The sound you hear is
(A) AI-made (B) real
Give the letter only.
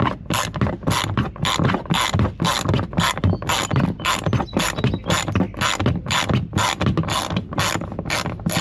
B